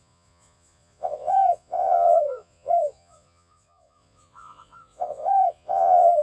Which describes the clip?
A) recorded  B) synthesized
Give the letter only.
B